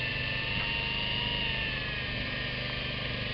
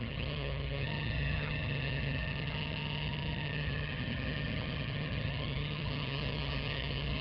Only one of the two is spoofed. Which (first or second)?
second